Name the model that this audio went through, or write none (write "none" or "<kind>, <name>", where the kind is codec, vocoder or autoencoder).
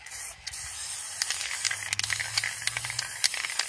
none